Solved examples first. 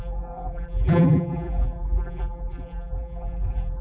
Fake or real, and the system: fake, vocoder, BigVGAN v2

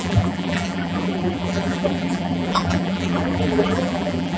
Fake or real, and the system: fake, vocoder, BigVGAN v2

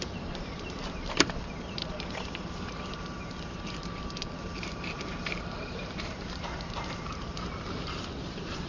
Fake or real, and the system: fake, vocoder, BigVGAN v2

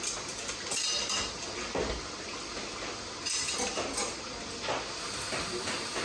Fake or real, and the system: real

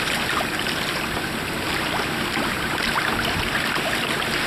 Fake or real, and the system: real